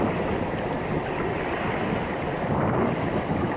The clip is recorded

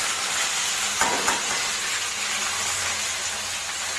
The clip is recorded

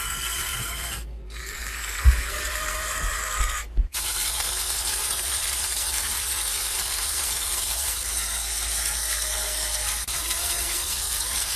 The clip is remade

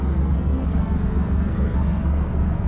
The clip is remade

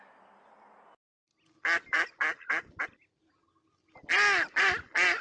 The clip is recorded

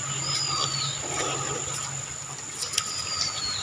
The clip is recorded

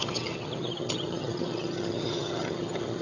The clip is remade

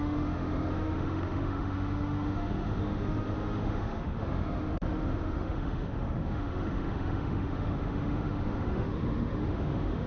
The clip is remade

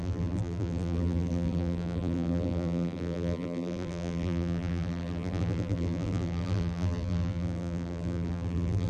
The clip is remade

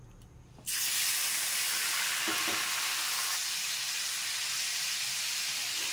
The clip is recorded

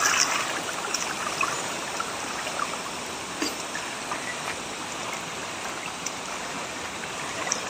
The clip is recorded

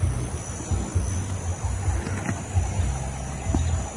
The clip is recorded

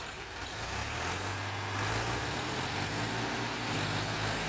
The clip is recorded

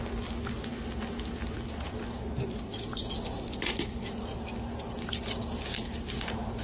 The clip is recorded